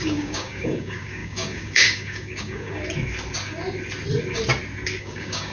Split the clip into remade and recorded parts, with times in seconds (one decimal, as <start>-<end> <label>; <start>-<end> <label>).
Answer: 0.0-2.8 remade; 2.8-5.0 recorded; 5.0-5.5 remade